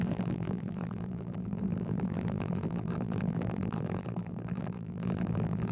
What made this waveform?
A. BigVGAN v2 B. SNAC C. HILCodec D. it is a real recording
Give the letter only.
A